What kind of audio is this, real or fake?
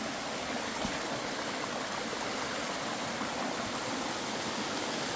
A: real